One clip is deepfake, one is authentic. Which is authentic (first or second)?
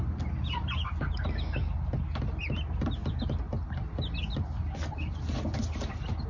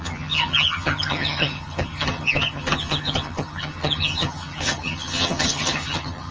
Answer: first